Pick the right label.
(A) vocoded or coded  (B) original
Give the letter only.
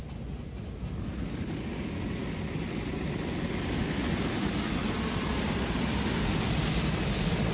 B